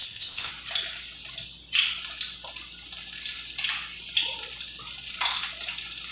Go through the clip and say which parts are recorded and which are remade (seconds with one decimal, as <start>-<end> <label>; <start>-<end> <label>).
0.0-0.5 remade; 0.5-6.1 recorded